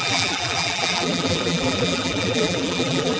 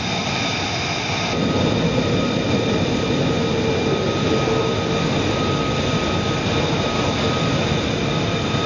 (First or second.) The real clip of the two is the second